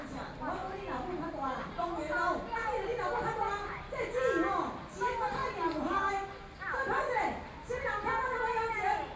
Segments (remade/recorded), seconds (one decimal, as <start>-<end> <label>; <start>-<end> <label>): 0.0-9.2 recorded

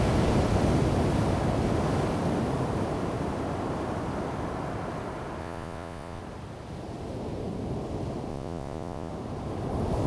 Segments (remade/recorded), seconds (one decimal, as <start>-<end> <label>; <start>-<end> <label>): 0.0-5.4 recorded; 5.4-6.2 remade; 6.2-8.3 recorded; 8.3-9.1 remade; 9.1-10.1 recorded

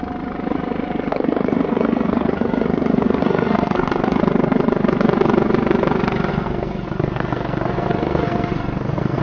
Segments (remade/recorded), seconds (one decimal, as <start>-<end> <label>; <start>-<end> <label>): 0.0-1.1 recorded; 1.1-4.2 remade; 4.2-6.3 recorded; 6.3-9.2 remade

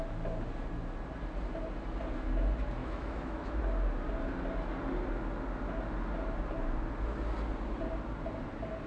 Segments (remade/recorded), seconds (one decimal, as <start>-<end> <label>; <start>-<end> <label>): 0.0-2.8 recorded; 2.8-3.6 remade; 3.6-8.9 recorded

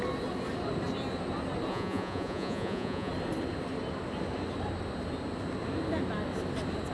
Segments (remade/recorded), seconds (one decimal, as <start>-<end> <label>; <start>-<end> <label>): 0.0-1.7 recorded; 1.7-3.1 remade; 3.1-6.9 recorded

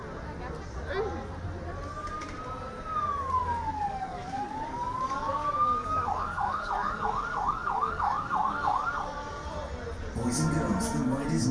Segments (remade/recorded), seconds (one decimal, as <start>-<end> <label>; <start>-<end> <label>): 0.0-3.2 recorded; 3.2-9.4 remade; 9.4-11.5 recorded